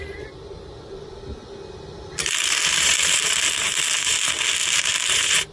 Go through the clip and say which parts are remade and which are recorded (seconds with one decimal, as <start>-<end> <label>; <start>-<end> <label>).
0.0-2.4 recorded; 2.4-3.5 remade; 3.5-4.6 recorded; 4.6-5.5 remade